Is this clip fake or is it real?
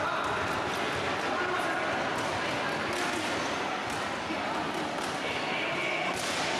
real